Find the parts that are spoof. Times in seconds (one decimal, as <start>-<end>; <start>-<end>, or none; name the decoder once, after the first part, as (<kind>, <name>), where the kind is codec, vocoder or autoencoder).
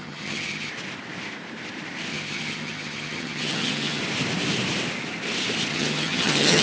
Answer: 0.0-0.7 (vocoder, HiFi-GAN); 2.1-4.0; 5.7-6.6